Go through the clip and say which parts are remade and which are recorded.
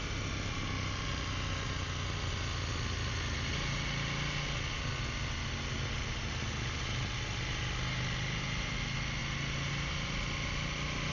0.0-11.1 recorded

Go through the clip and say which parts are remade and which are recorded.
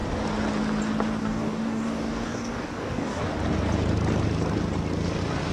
0.0-1.2 recorded; 1.2-3.2 remade; 3.2-5.5 recorded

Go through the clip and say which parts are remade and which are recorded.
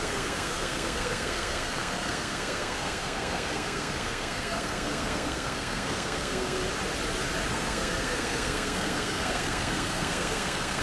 0.0-6.6 remade; 6.6-7.5 recorded; 7.5-10.8 remade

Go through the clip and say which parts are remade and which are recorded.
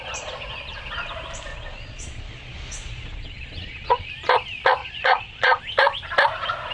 0.0-1.5 recorded; 1.5-4.1 remade; 4.1-4.8 recorded; 4.8-5.6 remade; 5.6-6.7 recorded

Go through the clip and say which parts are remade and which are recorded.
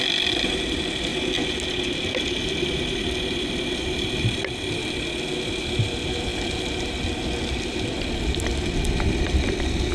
0.0-9.9 recorded